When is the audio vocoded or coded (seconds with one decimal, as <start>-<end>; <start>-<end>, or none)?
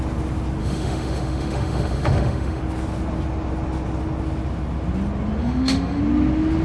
0.6-2.6; 5.4-6.0